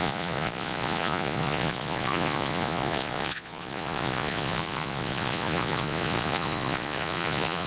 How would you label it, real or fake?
fake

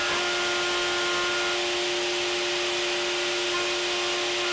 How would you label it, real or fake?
real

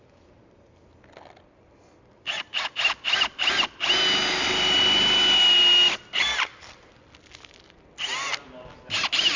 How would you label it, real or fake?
real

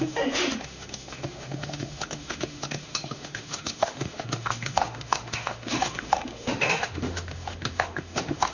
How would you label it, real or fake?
fake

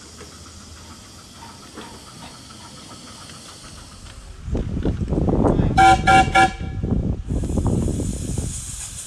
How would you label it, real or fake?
real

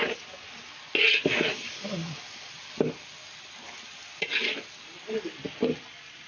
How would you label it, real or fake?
real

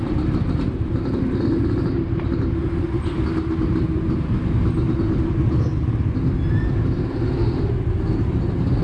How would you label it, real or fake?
real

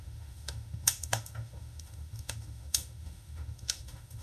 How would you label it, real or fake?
fake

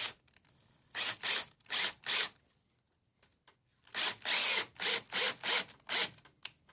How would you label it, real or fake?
real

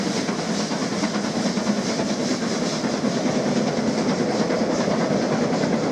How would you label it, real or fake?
real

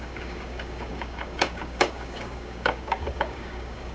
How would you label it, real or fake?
fake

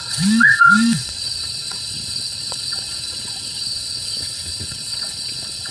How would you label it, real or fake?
fake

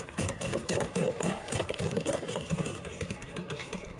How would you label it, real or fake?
fake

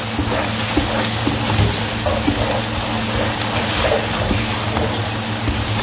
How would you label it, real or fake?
real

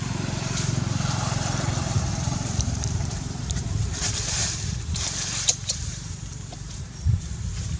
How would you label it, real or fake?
fake